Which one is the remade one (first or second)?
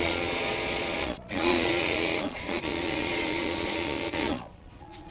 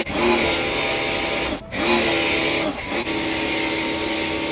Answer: first